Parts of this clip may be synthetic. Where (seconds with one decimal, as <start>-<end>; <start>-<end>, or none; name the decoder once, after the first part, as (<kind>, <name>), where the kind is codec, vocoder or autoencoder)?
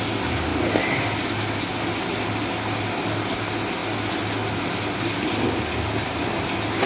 none